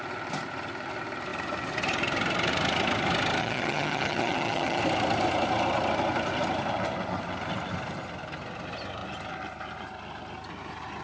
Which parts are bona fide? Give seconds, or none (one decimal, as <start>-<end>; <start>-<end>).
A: 0.0-3.4; 4.8-11.0